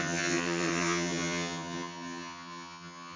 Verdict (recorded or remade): remade